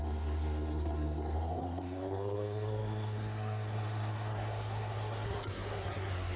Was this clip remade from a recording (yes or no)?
yes